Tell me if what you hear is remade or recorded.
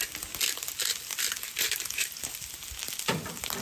recorded